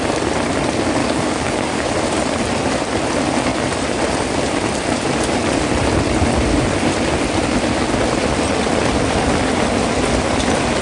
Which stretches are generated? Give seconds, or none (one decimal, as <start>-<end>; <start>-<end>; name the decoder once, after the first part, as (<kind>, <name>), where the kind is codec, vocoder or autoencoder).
1.0-1.9 (codec, DAC)